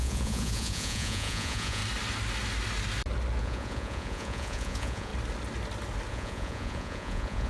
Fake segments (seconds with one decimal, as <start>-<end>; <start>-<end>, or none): 0.0-1.8; 3.4-5.1; 6.1-7.5